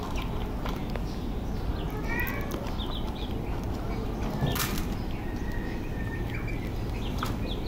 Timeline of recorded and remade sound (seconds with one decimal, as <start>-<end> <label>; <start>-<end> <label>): 0.0-7.7 recorded

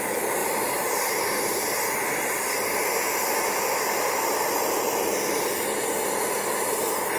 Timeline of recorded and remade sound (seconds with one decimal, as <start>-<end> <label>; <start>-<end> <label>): 0.0-0.4 recorded; 0.4-4.1 remade; 4.1-7.2 recorded

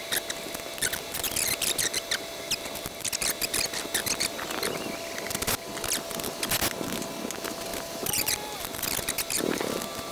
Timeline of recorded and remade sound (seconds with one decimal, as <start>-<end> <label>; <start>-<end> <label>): 0.0-7.7 recorded; 7.7-8.9 remade; 8.9-10.1 recorded

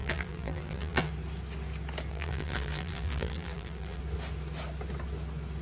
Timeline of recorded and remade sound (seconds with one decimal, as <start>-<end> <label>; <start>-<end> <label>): 0.0-1.1 remade; 1.1-2.1 recorded; 2.1-4.0 remade; 4.0-5.6 recorded

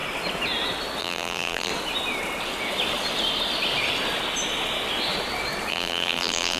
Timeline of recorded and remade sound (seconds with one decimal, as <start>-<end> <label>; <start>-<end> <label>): 0.0-1.0 recorded; 1.0-1.7 remade; 1.7-5.7 recorded; 5.7-6.6 remade

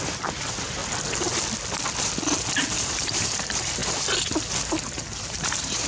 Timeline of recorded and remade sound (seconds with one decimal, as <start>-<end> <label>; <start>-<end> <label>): 0.0-0.8 remade; 0.8-2.7 recorded; 2.7-3.8 remade; 3.8-5.1 recorded; 5.1-5.9 remade

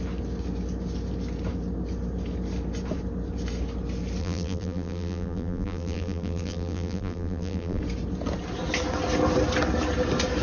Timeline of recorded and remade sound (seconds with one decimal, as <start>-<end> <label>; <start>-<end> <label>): 0.0-4.2 recorded; 4.2-7.8 remade; 7.8-10.4 recorded